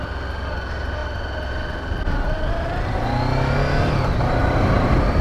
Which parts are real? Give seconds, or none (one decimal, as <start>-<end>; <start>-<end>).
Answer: 0.0-4.4